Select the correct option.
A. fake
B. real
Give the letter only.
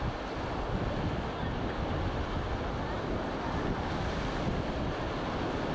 B